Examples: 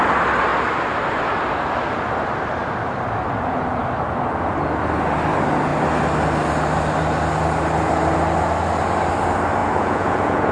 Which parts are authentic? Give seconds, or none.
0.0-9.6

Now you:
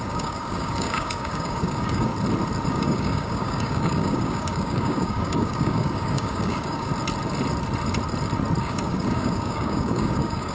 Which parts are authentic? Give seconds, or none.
2.1-2.7; 6.9-8.6

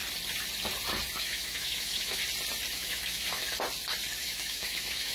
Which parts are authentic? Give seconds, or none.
0.0-1.2; 2.2-2.7; 3.4-4.2